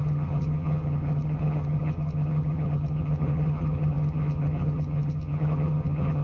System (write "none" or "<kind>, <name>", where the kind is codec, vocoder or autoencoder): vocoder, HiFi-GAN